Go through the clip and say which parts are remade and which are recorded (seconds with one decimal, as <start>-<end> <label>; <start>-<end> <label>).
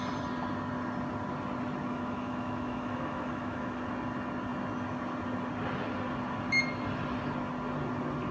0.0-1.9 recorded; 1.9-3.8 remade; 3.8-8.3 recorded